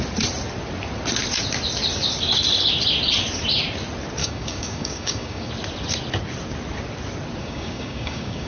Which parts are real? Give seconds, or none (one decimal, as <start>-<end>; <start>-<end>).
0.0-4.2; 5.5-7.4